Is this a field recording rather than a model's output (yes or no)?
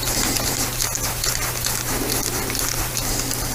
no